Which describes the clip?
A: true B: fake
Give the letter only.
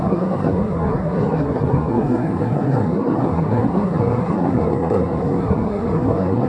B